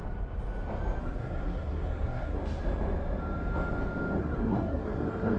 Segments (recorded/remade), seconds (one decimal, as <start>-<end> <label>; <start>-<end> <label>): 0.0-1.0 recorded; 1.0-2.4 remade; 2.4-4.2 recorded; 4.2-5.4 remade